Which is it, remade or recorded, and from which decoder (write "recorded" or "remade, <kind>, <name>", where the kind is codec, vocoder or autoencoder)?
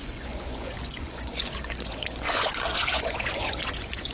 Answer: remade, vocoder, Vocos